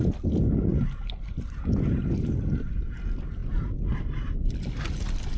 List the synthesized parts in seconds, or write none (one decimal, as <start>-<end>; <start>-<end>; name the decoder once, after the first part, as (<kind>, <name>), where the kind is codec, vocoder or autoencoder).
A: none